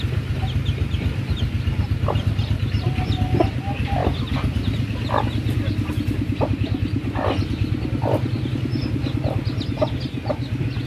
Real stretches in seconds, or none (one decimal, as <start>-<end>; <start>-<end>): 0.0-10.9